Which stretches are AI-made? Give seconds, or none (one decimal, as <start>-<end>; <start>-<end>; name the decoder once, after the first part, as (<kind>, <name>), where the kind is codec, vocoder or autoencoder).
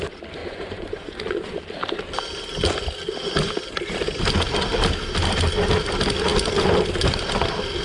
0.4-1.6 (vocoder, Vocos)